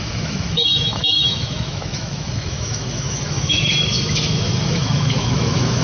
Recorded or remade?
remade